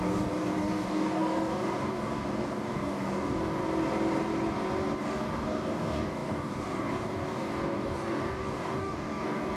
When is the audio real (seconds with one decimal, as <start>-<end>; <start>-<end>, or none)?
3.6-5.0

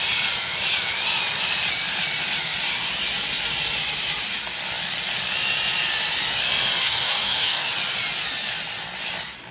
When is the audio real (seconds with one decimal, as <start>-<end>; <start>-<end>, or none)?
0.0-6.8; 7.7-9.5

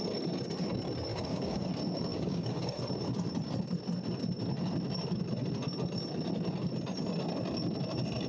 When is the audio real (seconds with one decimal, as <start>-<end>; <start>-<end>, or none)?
0.0-1.1; 1.7-2.1; 2.8-8.3

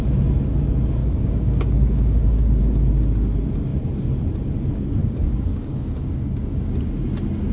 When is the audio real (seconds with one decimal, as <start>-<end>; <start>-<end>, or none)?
0.0-1.0; 2.6-5.0; 6.7-7.5

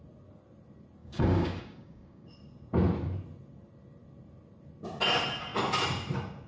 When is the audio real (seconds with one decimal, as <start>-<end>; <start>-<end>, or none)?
0.0-1.0; 2.3-6.5

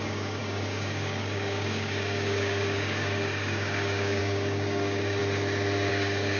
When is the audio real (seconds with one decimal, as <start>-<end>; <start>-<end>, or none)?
5.2-5.9

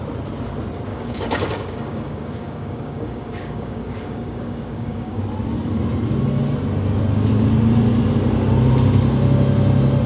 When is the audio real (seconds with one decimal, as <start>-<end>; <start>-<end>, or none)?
0.0-0.9; 5.2-10.1